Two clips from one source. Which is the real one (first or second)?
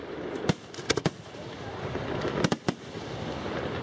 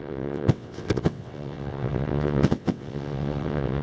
first